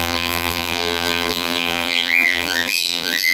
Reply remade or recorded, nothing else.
remade